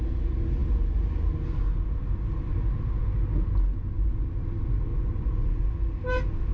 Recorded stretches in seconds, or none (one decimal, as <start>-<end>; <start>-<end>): 0.0-4.9; 5.6-6.5